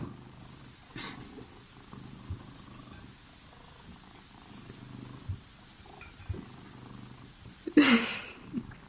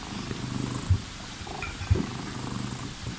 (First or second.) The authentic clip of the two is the first